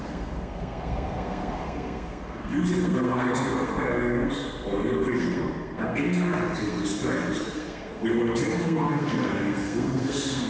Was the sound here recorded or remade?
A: remade